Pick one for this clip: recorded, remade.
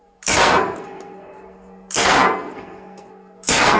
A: remade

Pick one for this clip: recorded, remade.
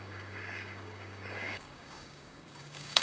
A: remade